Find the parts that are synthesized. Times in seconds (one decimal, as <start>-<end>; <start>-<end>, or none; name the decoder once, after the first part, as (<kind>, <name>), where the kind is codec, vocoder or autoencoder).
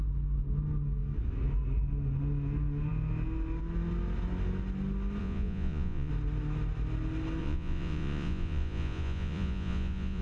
5.2-6.1 (vocoder, Vocos); 7.4-10.2